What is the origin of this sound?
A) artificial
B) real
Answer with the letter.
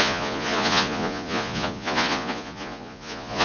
A